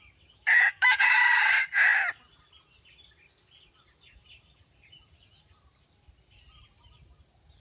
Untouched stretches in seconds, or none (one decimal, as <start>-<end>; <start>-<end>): 0.0-0.5; 1.5-7.6